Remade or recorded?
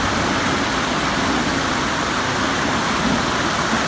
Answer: recorded